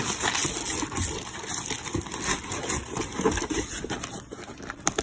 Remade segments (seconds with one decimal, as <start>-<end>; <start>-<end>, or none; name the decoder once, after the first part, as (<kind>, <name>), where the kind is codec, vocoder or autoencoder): none